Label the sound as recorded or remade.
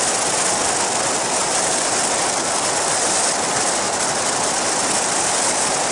recorded